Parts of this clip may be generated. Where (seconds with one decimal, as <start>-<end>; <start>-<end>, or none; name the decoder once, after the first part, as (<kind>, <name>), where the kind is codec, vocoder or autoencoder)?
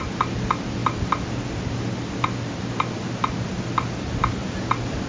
none